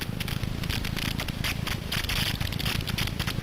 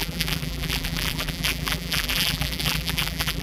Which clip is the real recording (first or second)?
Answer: first